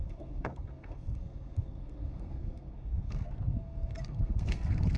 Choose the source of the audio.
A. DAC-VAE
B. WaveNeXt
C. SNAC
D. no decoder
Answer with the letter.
C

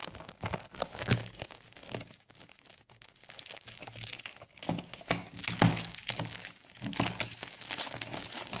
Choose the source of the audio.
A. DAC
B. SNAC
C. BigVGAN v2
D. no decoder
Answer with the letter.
A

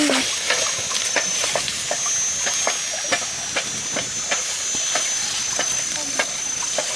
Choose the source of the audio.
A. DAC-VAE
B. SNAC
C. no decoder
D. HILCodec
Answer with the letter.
C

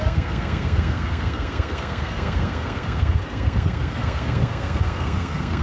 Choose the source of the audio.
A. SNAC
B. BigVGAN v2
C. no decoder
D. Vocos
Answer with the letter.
A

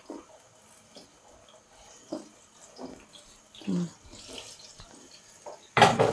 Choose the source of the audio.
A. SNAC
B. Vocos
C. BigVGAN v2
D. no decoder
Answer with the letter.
D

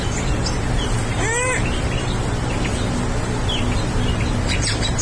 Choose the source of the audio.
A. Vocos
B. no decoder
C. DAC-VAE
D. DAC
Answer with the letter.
B